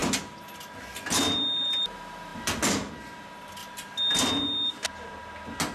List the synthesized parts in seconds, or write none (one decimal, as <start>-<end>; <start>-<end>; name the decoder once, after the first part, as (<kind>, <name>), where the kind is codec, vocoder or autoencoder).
none